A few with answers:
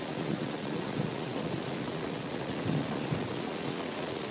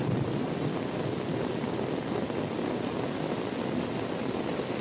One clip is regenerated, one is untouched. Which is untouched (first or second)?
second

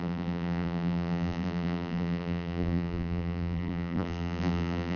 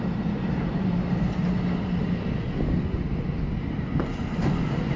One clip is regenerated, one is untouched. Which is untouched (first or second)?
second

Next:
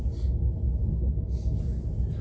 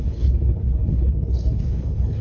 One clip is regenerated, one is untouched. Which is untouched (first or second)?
first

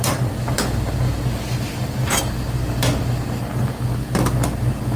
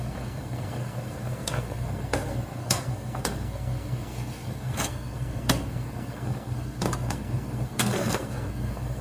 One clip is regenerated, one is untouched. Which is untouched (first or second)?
first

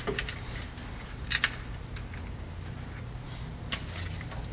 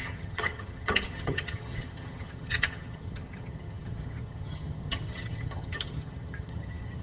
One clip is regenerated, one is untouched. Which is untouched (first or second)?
first